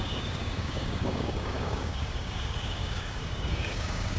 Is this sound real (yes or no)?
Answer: no